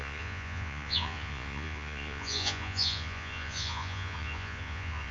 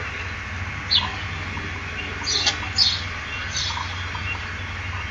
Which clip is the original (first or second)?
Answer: second